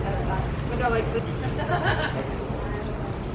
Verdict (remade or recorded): remade